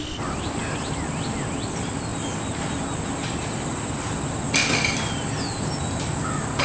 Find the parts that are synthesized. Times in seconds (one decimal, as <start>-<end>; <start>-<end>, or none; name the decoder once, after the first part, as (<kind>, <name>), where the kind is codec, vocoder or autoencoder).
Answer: none